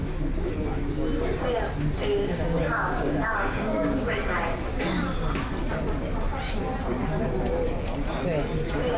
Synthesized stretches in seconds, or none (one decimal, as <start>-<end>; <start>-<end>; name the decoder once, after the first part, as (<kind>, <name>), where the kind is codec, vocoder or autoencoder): 2.1-4.8 (codec, DAC)